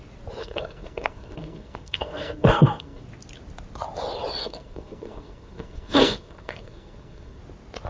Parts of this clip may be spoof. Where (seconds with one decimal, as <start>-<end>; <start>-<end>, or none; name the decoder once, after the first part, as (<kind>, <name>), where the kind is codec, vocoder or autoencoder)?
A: 0.4-3.0 (codec, SNAC); 4.4-7.4